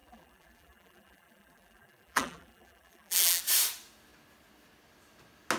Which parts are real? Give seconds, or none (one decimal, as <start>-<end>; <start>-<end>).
3.4-5.6